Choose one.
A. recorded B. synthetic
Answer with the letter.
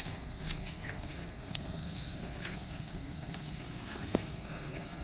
B